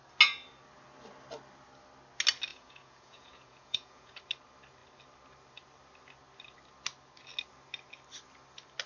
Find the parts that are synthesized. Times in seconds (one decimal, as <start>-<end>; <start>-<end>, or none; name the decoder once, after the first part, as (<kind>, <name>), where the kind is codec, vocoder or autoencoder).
2.5-4.2 (vocoder, Vocos)